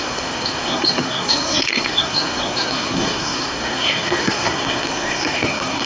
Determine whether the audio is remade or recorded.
remade